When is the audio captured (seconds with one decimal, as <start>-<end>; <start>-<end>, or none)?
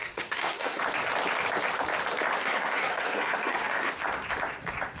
0.8-2.4; 3.9-5.0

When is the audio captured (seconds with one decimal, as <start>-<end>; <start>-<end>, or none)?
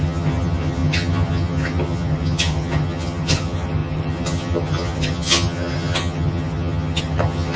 none